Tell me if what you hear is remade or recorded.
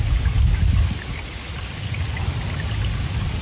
recorded